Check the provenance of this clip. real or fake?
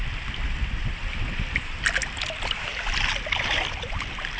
real